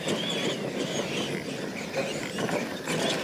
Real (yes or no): yes